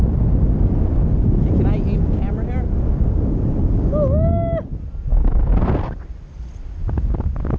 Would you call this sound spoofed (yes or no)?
no